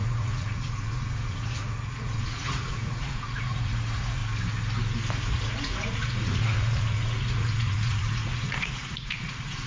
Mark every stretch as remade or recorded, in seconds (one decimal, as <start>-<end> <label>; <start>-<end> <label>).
0.0-4.2 remade; 4.2-5.3 recorded; 5.3-9.7 remade